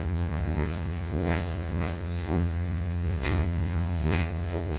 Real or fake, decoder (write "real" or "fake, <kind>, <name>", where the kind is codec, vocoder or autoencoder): fake, vocoder, Vocos